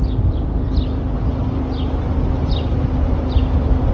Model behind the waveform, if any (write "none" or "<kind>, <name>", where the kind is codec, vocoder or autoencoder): none